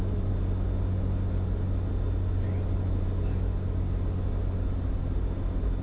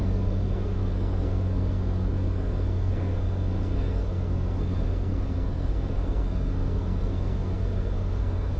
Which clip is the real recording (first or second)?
first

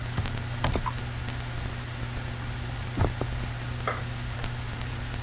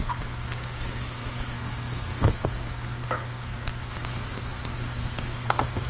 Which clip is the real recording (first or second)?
first